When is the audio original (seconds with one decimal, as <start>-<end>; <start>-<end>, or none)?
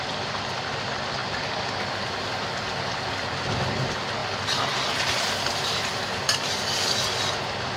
1.2-3.4; 4.2-5.4